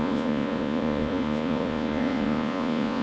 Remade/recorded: remade